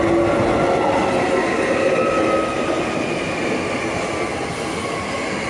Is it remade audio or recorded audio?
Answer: recorded